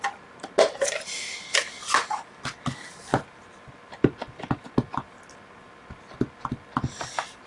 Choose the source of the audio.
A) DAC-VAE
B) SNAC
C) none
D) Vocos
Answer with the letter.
C